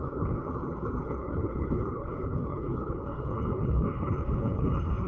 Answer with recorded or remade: remade